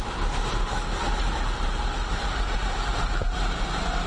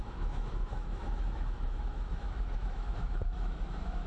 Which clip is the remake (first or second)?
second